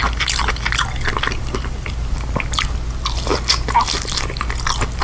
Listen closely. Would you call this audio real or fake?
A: real